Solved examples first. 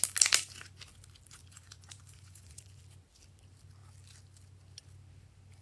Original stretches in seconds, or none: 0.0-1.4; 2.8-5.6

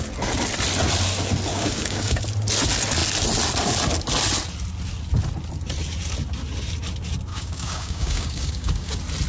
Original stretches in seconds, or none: 0.0-1.5; 2.2-7.3; 8.9-9.3

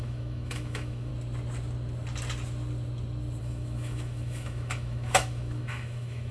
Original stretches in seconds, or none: 1.1-3.4

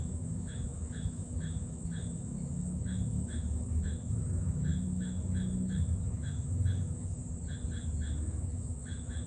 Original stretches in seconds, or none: 7.2-8.2

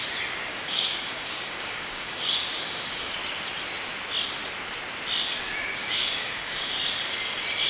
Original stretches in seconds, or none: 0.0-0.5; 3.1-5.8; 6.7-7.7